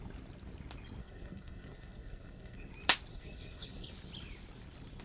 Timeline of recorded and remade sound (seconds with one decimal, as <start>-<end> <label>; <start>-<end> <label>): 0.0-1.0 recorded; 1.0-2.7 remade; 2.7-3.1 recorded; 3.1-3.9 remade; 3.9-5.0 recorded